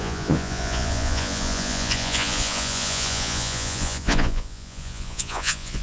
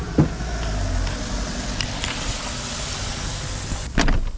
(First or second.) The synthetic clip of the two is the first